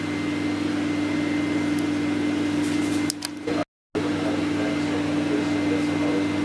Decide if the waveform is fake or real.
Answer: real